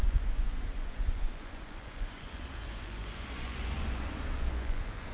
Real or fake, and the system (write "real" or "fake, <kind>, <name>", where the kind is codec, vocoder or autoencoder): fake, vocoder, Vocos